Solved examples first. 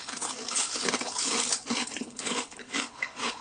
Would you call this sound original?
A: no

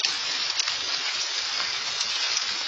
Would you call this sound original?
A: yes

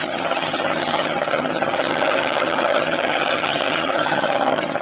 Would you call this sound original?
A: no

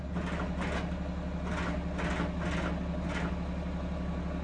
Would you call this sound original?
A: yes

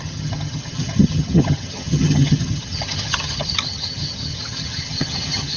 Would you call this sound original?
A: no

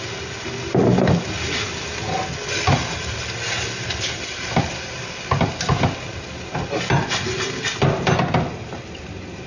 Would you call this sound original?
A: yes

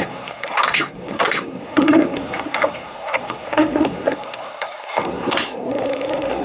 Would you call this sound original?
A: no